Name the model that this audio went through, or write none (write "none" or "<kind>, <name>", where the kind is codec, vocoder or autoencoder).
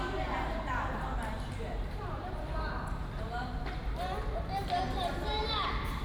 vocoder, BigVGAN v2